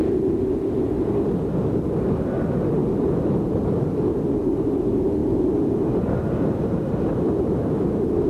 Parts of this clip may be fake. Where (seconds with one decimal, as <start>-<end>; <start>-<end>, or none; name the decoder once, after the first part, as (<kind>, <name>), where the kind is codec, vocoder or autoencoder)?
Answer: none